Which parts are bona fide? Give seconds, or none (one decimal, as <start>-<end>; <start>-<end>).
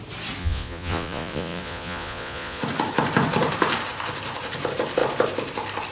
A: 0.0-0.4; 2.6-5.9